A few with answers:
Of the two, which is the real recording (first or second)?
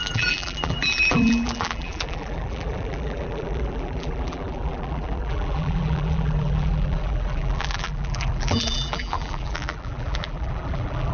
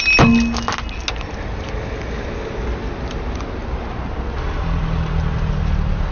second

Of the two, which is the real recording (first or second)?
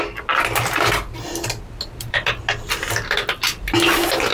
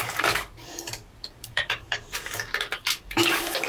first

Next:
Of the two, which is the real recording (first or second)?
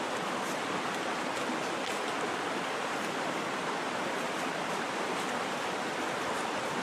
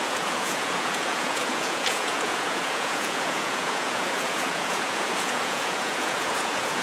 first